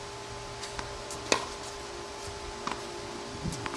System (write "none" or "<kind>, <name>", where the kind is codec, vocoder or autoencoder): none